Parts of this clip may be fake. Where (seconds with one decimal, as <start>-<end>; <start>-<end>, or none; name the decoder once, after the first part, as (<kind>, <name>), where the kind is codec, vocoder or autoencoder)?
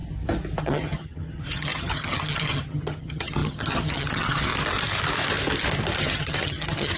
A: 0.6-4.5 (vocoder, HiFi-GAN); 6.0-7.0